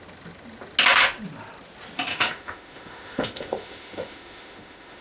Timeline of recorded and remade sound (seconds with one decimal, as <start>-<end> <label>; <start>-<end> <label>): 0.0-2.1 recorded; 2.1-5.0 remade